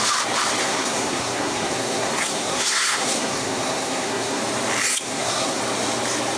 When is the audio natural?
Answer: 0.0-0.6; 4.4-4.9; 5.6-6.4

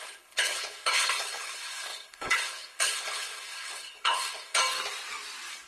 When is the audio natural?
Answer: 4.6-5.7

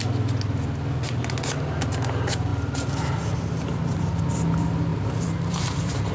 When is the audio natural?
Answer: 0.0-4.9

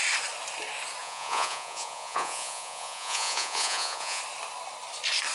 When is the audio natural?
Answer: 0.0-1.0; 4.2-5.3